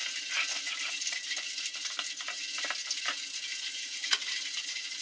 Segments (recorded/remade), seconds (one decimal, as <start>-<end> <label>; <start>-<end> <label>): 0.0-3.5 recorded; 3.5-5.0 remade